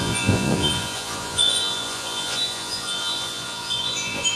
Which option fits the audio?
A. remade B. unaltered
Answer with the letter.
A